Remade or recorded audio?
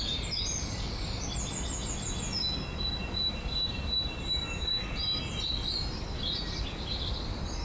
recorded